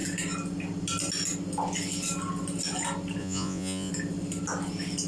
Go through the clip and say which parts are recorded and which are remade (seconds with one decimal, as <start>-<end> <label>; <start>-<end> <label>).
0.0-3.2 recorded; 3.2-3.9 remade; 3.9-5.1 recorded